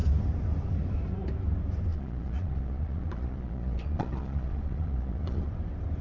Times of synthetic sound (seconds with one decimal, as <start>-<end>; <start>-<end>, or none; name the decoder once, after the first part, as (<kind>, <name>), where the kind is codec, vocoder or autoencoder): 1.9-5.5 (vocoder, Vocos)